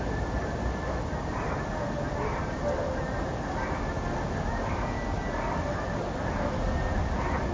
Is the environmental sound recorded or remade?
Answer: recorded